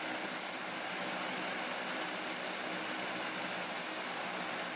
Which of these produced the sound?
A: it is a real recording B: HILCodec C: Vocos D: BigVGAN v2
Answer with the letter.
A